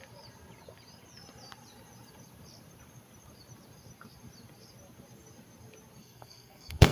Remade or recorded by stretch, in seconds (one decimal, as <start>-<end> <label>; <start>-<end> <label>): 0.0-6.0 recorded; 6.0-6.9 remade